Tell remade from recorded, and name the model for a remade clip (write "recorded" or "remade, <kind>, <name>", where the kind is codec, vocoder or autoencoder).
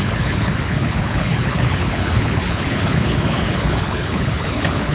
remade, codec, HILCodec